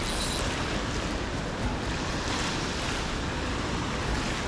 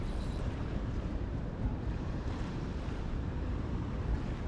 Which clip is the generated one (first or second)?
second